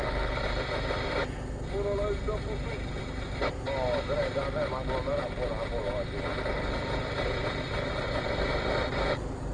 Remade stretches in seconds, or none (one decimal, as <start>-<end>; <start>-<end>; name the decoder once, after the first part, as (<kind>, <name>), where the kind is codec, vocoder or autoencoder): none